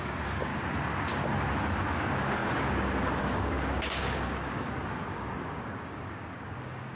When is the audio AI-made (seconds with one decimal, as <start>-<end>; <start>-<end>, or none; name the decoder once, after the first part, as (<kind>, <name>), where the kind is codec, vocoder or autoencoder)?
0.0-0.5 (codec, DAC); 1.8-7.0